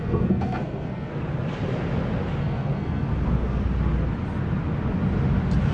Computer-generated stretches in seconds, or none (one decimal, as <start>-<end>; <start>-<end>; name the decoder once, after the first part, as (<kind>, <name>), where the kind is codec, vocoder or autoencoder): 0.0-1.1 (codec, SNAC); 2.4-3.1